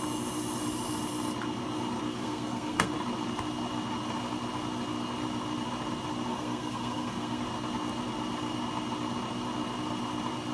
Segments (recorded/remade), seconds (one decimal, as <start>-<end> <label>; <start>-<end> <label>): 0.0-2.2 recorded; 2.2-2.9 remade; 2.9-6.3 recorded; 6.3-7.4 remade; 7.4-10.5 recorded